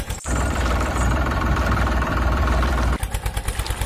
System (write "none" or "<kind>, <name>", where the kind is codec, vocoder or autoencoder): vocoder, BigVGAN v2